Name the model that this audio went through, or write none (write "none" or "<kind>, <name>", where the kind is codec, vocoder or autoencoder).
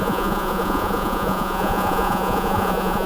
vocoder, Vocos